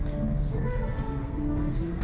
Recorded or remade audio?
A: remade